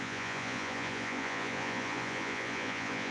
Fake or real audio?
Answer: fake